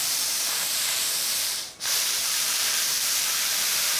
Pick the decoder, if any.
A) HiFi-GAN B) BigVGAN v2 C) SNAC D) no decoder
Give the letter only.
B